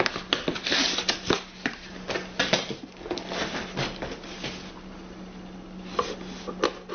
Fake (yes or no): no